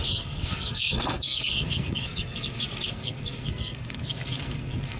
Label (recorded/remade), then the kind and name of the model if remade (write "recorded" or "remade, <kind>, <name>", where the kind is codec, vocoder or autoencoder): remade, codec, SNAC